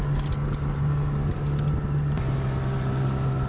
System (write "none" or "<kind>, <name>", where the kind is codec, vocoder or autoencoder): none